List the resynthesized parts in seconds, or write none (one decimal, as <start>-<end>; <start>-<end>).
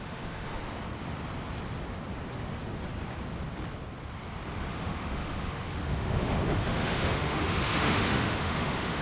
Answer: 0.0-0.6; 4.7-9.0